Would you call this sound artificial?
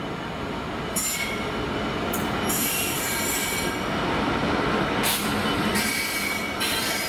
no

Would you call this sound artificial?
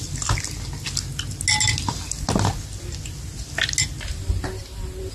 no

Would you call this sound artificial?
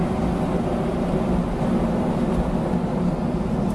no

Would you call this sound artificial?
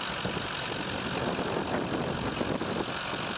no